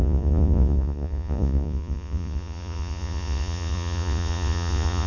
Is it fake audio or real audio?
fake